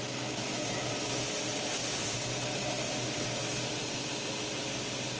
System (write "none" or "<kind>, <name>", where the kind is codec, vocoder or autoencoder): none